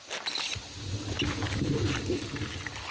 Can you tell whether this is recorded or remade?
recorded